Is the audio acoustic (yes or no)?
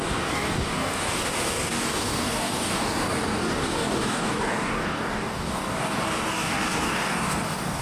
no